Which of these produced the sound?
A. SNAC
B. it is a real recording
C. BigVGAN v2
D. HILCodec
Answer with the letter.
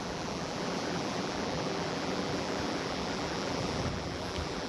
C